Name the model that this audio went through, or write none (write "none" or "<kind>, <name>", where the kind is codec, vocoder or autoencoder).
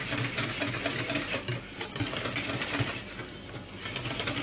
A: none